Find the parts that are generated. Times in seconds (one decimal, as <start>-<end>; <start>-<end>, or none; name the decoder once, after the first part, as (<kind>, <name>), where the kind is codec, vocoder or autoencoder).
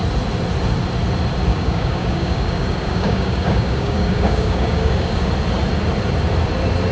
1.5-5.3 (codec, DAC)